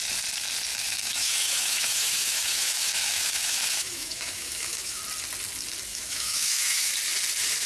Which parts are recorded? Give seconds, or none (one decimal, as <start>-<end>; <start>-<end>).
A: 0.0-0.7; 5.0-5.9; 6.9-7.7